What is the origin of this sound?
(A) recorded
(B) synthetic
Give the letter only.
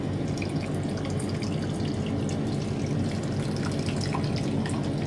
A